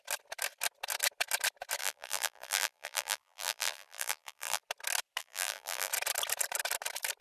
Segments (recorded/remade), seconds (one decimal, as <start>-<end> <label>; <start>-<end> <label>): 0.0-1.8 recorded; 1.8-4.6 remade; 4.6-5.2 recorded; 5.2-5.9 remade; 5.9-7.2 recorded